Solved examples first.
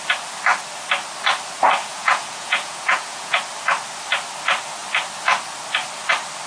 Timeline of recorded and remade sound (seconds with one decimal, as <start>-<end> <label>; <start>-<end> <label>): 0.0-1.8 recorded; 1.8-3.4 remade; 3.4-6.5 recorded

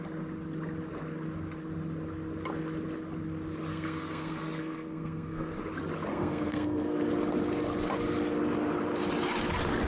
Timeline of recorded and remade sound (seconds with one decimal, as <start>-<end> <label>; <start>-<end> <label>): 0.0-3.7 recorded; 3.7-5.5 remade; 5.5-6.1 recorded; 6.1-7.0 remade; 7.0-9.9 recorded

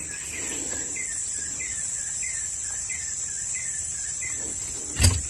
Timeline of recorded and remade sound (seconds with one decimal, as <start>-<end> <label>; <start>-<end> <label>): 0.0-1.2 recorded; 1.2-4.4 remade; 4.4-5.3 recorded